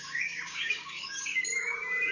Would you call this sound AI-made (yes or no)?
yes